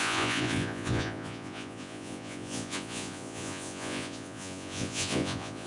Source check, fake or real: fake